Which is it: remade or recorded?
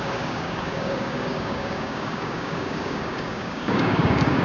remade